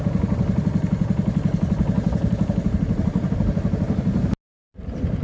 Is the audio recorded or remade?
recorded